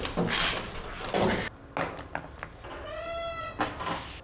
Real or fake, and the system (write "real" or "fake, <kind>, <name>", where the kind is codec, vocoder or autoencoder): real